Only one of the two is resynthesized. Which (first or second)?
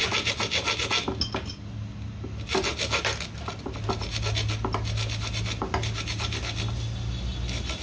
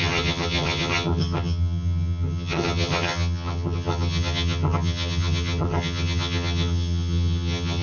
second